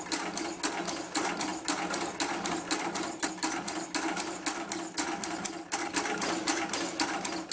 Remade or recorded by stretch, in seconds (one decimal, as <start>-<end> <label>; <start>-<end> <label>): 0.0-7.5 recorded